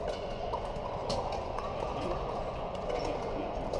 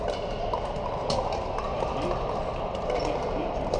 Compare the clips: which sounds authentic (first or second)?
second